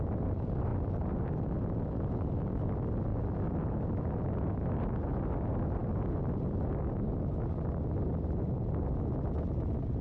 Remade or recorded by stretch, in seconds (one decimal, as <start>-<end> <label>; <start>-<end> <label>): 0.0-10.0 recorded